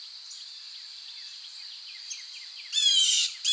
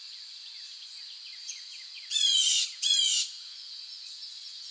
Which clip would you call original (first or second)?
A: first